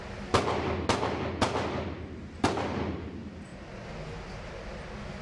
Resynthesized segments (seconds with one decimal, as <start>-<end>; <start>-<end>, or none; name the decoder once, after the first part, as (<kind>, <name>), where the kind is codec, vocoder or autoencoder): none